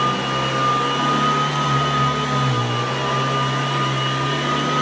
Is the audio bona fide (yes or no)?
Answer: yes